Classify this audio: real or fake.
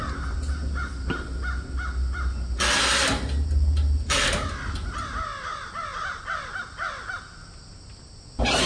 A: real